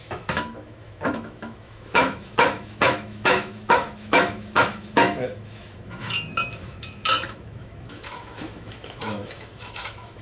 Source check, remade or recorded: remade